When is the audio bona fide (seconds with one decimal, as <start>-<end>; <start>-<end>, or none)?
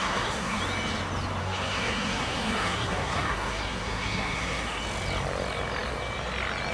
0.6-1.4; 4.8-6.7